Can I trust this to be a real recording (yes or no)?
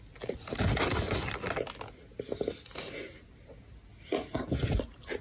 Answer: yes